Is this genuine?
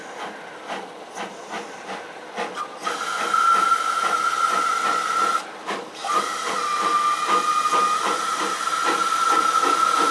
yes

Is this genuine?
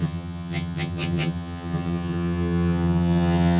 no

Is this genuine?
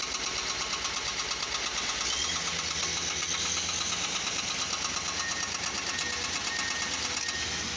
yes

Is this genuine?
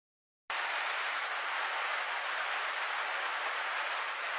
yes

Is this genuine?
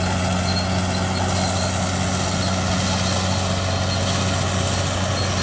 yes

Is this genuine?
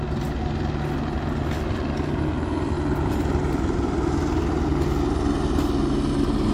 yes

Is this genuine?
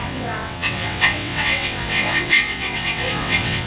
no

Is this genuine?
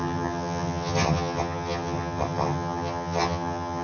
no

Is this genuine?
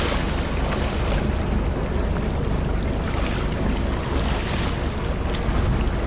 yes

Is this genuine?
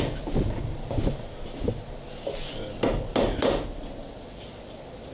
yes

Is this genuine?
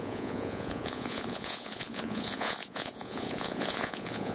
no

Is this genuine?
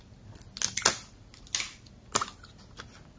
yes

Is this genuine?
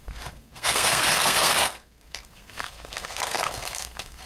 no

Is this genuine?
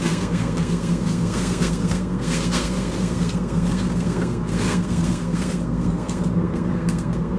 no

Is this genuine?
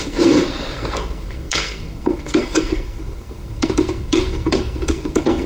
no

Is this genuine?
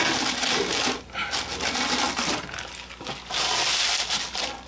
yes